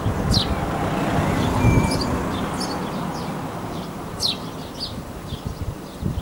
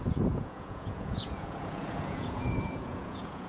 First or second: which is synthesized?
second